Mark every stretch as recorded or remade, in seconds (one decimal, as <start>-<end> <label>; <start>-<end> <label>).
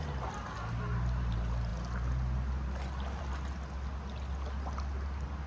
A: 0.0-5.5 recorded